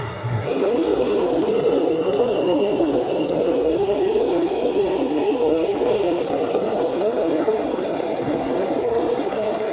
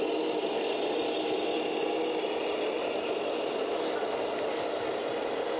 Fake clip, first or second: first